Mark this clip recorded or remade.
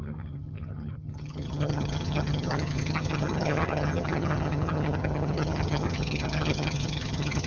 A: remade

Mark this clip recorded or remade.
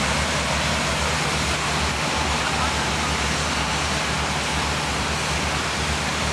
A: recorded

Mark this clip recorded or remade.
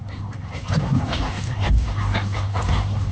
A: remade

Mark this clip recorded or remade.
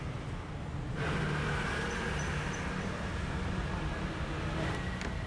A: recorded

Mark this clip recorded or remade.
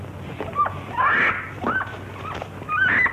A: recorded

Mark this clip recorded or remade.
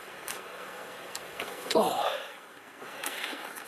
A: remade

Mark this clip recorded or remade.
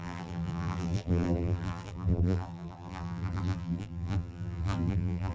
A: remade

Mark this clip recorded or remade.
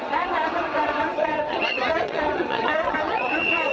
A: remade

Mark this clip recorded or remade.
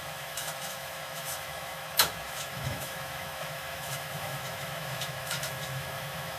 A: remade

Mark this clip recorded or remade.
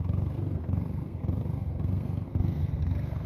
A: remade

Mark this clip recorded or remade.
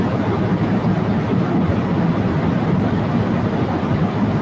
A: recorded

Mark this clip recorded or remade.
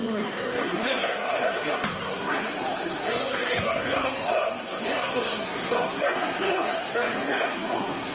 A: remade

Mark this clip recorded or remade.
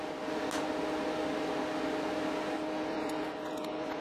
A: recorded